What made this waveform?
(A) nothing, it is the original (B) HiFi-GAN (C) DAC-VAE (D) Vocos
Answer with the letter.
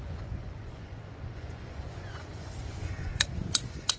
D